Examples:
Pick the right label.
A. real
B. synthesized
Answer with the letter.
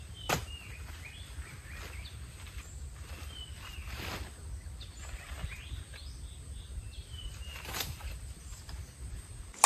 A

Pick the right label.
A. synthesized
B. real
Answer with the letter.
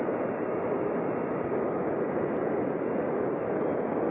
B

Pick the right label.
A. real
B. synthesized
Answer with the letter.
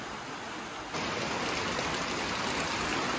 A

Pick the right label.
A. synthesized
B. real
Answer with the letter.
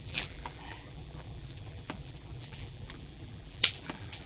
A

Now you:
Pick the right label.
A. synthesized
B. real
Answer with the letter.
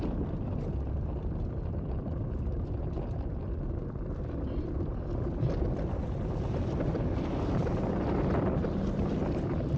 B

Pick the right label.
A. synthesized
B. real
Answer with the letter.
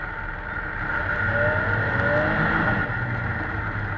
B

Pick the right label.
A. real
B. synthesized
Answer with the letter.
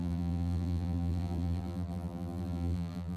B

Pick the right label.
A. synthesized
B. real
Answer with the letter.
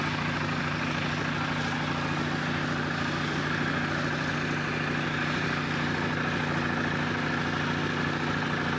B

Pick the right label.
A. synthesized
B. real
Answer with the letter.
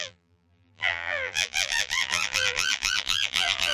A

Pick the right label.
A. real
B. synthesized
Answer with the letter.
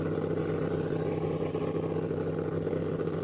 A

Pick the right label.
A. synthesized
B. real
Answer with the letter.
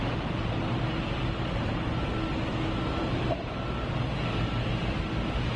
B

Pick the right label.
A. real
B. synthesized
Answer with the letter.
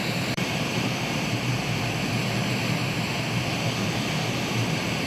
B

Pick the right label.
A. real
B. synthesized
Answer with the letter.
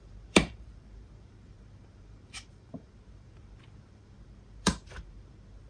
B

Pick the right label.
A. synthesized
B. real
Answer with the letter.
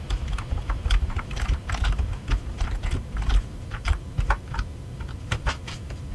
A